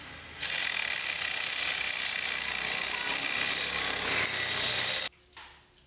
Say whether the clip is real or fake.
real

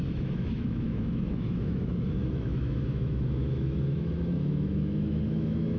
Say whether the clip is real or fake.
fake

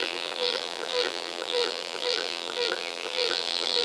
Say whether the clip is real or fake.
fake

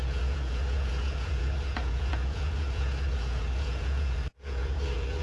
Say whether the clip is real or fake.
fake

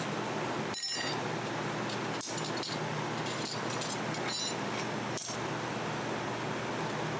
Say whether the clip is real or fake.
real